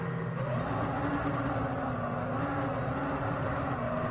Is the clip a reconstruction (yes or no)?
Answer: no